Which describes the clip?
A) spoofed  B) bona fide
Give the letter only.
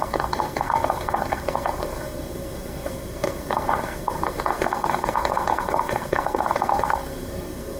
A